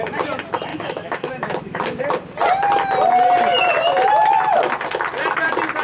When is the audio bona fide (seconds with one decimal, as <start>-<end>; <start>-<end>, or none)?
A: 0.0-0.7; 2.0-5.8